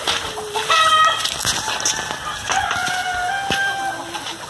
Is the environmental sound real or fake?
real